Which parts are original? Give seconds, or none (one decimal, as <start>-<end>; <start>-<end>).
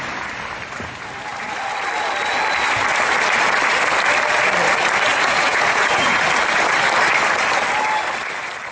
0.0-5.1; 6.2-8.7